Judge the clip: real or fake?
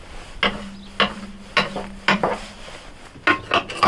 real